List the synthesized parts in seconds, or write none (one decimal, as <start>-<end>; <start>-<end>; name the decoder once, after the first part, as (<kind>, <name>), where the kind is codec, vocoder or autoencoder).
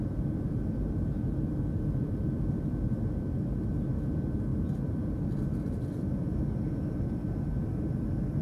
4.5-5.3 (vocoder, BigVGAN v2)